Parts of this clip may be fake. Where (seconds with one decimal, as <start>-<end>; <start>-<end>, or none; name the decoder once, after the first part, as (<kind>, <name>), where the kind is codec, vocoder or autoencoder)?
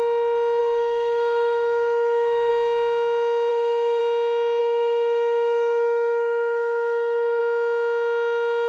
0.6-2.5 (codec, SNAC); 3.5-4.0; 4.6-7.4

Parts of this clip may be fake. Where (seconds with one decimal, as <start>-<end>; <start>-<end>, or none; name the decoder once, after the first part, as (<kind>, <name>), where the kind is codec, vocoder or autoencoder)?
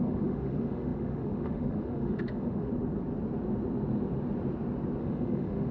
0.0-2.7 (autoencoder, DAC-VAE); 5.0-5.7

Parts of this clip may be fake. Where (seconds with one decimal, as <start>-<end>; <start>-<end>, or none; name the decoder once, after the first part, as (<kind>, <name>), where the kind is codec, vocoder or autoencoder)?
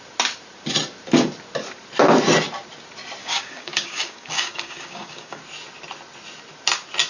3.2-5.4 (codec, DAC)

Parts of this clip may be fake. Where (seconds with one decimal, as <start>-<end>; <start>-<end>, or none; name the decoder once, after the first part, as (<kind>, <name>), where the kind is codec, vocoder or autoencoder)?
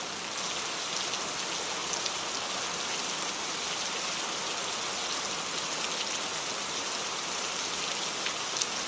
none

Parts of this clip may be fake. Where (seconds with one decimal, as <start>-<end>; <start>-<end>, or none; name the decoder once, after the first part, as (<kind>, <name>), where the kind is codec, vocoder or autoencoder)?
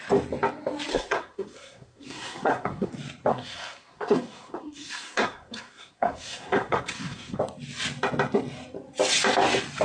0.9-2.9 (codec, SNAC); 3.3-7.4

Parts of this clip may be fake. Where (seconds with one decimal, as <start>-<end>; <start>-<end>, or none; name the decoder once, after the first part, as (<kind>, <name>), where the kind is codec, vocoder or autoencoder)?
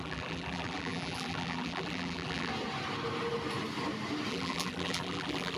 0.0-2.5 (vocoder, BigVGAN v2); 4.3-5.6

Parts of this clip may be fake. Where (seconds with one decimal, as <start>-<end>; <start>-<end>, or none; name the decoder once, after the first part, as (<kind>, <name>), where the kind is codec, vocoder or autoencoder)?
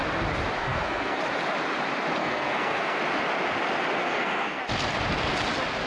0.6-1.2 (codec, SNAC); 2.2-3.0; 4.0-4.6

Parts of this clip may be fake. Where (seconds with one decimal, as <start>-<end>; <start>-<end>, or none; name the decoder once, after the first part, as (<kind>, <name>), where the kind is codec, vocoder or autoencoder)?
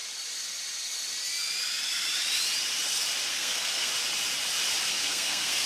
3.3-3.9 (codec, SNAC); 4.9-5.7